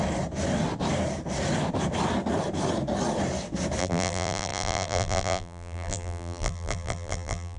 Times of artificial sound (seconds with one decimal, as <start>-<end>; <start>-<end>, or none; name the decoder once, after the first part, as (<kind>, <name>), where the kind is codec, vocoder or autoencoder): 3.8-7.6 (vocoder, BigVGAN v2)